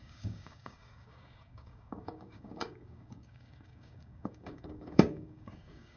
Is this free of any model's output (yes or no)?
no